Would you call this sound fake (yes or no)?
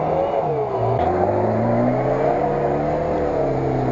no